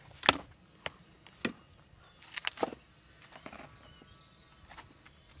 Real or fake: real